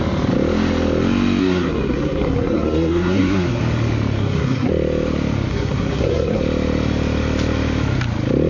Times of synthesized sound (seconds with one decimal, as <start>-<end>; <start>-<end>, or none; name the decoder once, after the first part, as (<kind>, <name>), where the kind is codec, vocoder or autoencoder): 1.4-3.6 (codec, SNAC); 4.2-4.7; 5.5-6.4